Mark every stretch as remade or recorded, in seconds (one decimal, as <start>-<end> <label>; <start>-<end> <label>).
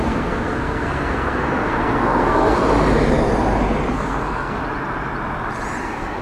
0.0-2.6 remade; 2.6-3.9 recorded; 3.9-4.6 remade; 4.6-5.8 recorded; 5.8-6.2 remade